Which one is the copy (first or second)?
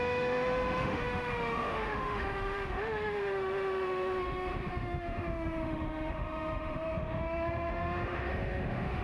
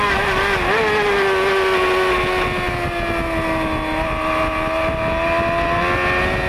first